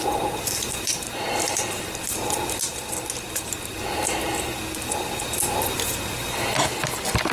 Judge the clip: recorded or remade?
recorded